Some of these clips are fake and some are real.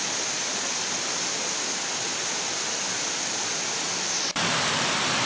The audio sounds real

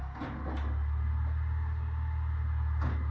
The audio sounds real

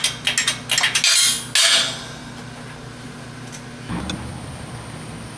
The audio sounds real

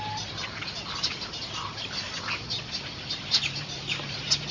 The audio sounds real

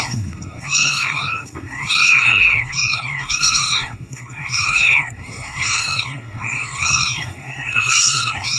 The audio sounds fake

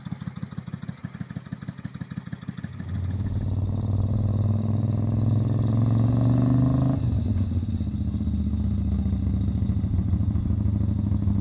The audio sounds real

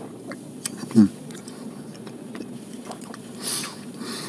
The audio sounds fake